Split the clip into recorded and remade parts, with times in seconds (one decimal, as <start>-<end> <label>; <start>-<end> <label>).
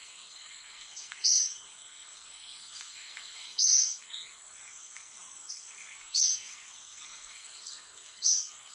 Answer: 0.0-8.7 remade